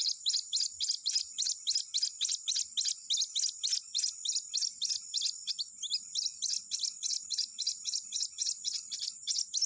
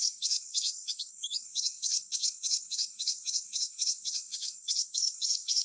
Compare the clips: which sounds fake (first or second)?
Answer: second